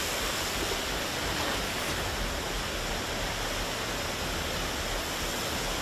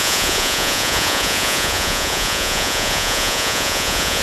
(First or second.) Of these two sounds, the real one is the first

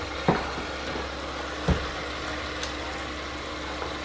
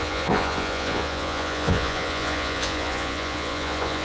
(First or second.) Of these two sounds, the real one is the first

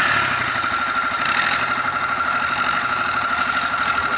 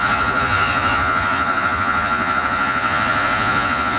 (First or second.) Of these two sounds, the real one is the first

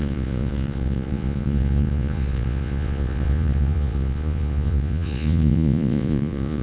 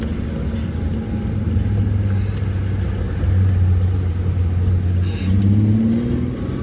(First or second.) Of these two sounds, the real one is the second